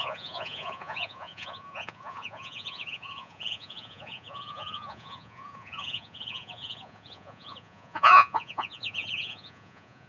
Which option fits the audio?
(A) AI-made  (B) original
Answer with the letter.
A